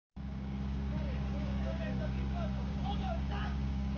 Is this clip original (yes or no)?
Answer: no